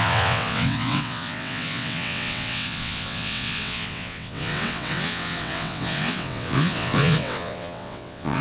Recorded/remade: remade